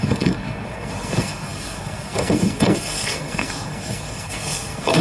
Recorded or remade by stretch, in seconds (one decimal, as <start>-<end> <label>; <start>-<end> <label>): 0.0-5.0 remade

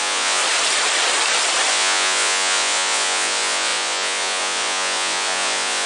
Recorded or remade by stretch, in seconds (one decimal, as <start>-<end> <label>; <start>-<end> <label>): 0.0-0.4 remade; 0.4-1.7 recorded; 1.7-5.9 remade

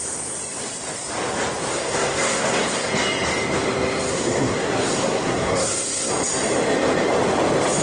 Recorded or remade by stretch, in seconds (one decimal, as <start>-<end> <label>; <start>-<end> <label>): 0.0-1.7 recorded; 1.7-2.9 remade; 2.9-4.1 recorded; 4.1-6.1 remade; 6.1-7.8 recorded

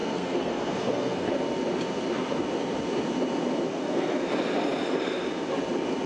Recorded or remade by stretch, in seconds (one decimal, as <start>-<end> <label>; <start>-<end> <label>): 0.0-1.3 remade; 1.3-3.7 recorded; 3.7-4.3 remade; 4.3-6.1 recorded